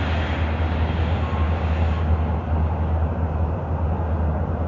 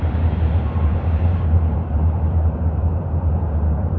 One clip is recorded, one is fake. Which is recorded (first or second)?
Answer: first